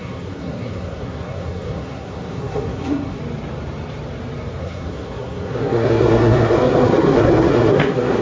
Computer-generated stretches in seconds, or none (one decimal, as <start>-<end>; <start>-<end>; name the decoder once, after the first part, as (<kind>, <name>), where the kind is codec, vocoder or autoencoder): 0.0-3.2 (codec, SNAC); 4.6-8.2